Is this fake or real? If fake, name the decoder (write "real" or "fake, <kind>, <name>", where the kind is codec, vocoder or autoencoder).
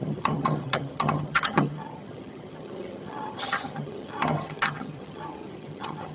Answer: fake, vocoder, HiFi-GAN